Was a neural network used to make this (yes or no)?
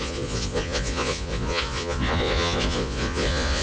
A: yes